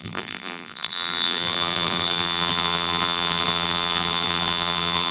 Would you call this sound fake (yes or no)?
yes